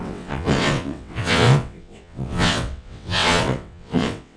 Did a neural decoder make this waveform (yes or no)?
yes